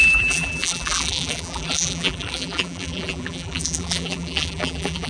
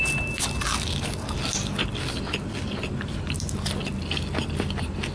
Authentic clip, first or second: second